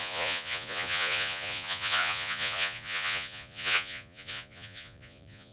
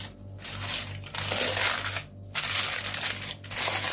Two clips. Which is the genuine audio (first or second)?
second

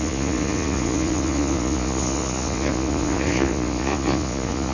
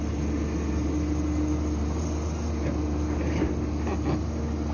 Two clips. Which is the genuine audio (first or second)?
second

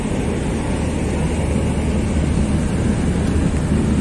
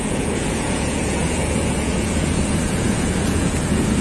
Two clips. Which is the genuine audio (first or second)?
first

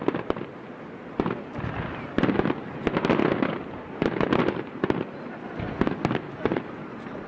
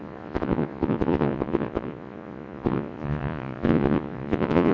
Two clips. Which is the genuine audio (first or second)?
first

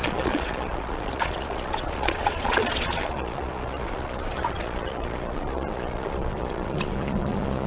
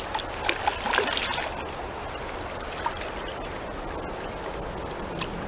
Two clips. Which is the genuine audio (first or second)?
second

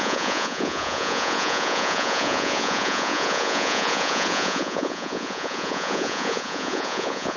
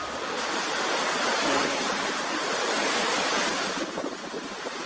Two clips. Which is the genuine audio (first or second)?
second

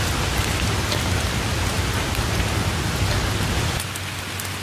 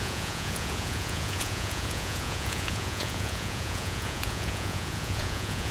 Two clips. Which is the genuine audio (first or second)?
first